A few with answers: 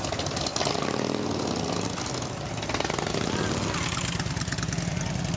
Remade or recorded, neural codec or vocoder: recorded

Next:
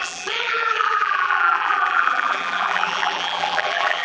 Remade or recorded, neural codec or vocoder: remade, vocoder, BigVGAN v2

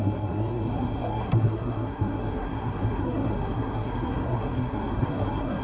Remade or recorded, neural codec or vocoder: remade, codec, SNAC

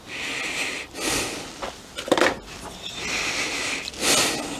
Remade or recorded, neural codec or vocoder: recorded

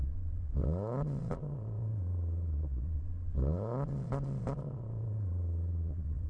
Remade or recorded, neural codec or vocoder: remade, vocoder, Vocos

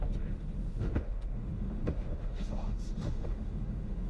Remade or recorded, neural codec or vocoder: remade, autoencoder, DAC-VAE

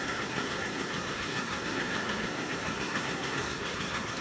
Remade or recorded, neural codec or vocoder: remade, codec, SNAC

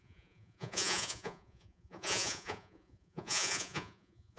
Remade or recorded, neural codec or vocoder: remade, vocoder, Vocos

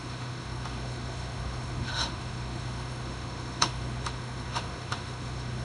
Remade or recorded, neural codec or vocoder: remade, autoencoder, DAC-VAE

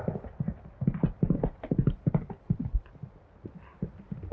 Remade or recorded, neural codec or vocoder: recorded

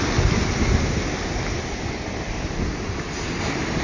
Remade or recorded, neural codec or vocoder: recorded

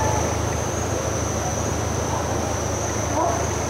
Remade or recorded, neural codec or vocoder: recorded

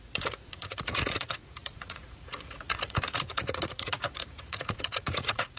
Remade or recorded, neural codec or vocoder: remade, vocoder, Vocos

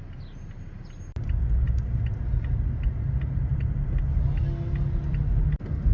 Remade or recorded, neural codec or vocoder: recorded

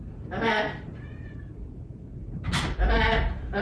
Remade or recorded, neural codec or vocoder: remade, vocoder, BigVGAN v2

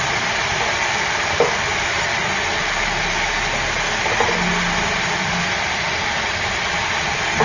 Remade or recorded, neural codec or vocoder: remade, vocoder, BigVGAN v2